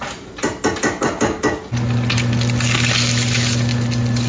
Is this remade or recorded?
recorded